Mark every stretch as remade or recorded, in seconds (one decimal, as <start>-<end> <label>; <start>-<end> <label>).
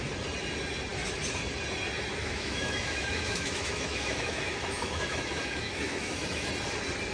0.0-2.2 recorded; 2.2-6.5 remade; 6.5-7.1 recorded